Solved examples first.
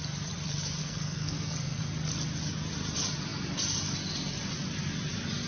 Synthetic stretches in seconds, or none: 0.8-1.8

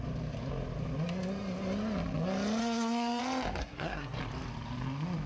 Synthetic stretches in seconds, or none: 2.6-3.2; 3.6-4.2

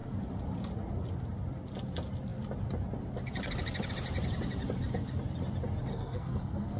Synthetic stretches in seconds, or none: 5.9-6.8